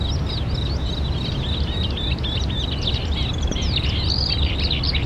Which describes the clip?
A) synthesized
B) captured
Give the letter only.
B